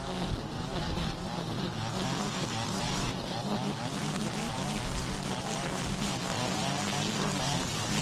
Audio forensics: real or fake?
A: real